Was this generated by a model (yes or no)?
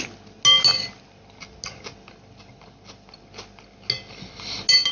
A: no